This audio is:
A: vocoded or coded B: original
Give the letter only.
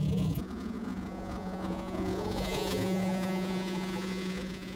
A